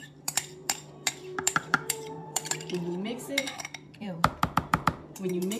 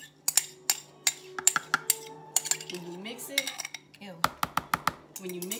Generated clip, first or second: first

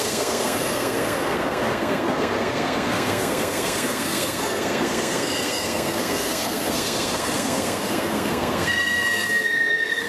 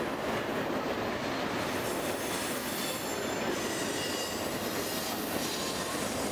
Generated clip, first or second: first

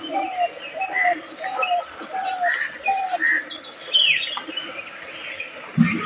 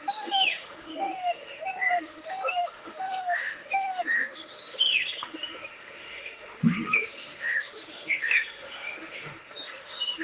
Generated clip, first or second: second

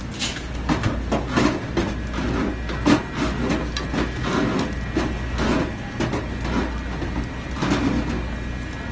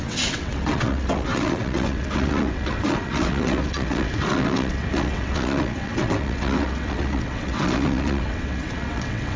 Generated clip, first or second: second